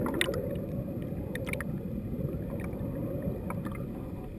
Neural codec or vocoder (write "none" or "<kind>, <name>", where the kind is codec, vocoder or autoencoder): none